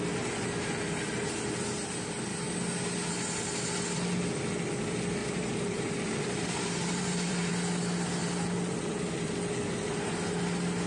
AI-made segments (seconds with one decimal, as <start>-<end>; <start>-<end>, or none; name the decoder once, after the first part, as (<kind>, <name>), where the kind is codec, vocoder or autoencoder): 5.2-7.5 (vocoder, BigVGAN v2)